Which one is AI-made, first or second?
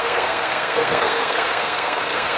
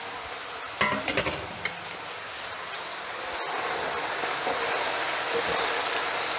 first